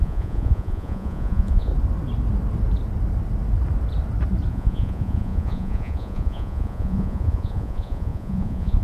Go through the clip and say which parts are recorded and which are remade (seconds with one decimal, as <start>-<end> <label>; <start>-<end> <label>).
0.0-1.7 remade; 1.7-4.5 recorded; 4.5-8.8 remade